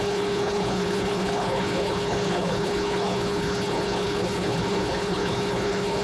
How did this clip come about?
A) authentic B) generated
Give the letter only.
B